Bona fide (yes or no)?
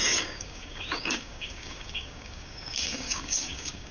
no